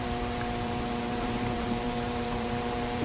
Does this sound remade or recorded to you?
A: remade